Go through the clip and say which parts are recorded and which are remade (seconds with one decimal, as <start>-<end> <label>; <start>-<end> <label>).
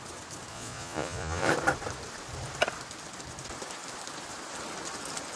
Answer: 0.0-0.5 recorded; 0.5-1.5 remade; 1.5-5.4 recorded